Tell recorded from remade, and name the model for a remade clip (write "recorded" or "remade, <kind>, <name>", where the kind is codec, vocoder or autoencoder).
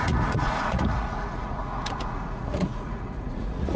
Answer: remade, vocoder, Vocos